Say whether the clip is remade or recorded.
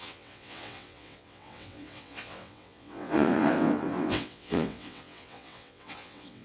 remade